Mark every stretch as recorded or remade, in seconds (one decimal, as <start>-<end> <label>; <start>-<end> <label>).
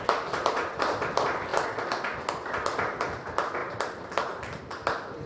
0.0-5.3 recorded